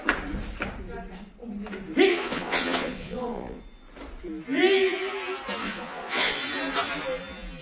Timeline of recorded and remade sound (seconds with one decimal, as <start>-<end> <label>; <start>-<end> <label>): 0.0-2.1 recorded; 2.1-3.6 remade; 3.6-5.6 recorded; 5.6-6.4 remade; 6.4-7.6 recorded

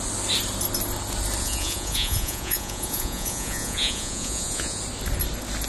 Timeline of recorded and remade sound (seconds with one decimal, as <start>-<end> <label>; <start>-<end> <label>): 0.0-1.4 recorded; 1.4-4.8 remade; 4.8-5.7 recorded

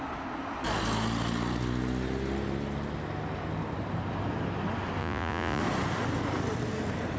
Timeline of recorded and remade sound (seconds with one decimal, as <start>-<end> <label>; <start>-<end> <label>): 0.0-5.0 recorded; 5.0-5.6 remade; 5.6-7.2 recorded

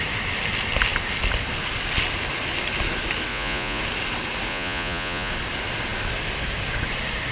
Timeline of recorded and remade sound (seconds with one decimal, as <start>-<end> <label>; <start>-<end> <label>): 0.0-3.3 recorded; 3.3-3.8 remade; 3.8-4.5 recorded; 4.5-5.3 remade; 5.3-7.3 recorded

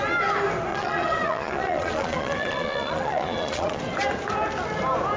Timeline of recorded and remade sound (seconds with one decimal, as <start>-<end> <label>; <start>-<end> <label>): 0.0-0.7 recorded; 0.7-3.8 remade; 3.8-5.2 recorded